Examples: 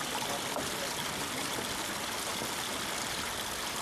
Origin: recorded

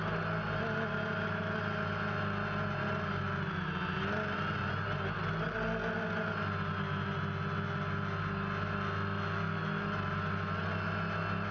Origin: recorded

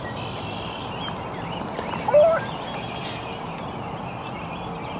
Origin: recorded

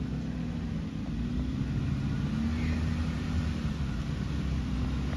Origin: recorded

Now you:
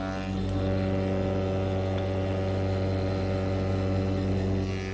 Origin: recorded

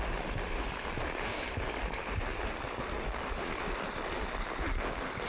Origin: recorded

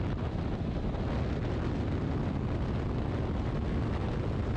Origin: recorded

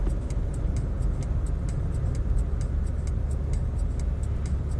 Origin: recorded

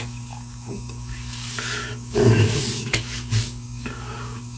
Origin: remade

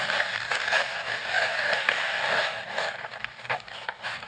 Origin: remade